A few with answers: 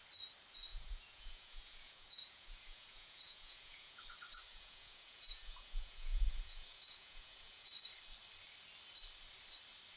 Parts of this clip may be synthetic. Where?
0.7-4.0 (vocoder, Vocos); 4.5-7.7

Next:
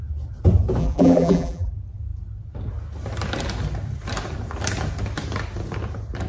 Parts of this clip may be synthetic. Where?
0.8-1.7 (vocoder, BigVGAN v2)